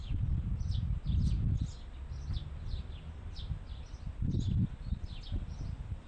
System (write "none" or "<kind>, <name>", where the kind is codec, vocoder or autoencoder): none